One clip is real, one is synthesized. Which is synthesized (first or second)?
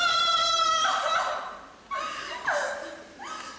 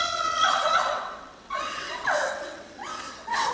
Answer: second